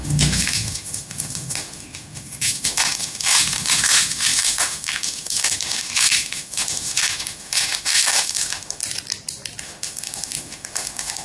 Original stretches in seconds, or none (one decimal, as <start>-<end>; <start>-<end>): 8.8-9.6